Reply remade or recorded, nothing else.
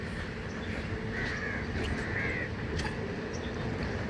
recorded